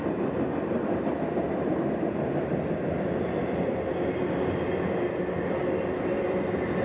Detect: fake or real real